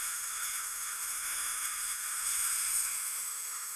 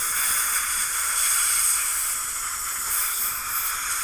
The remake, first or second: first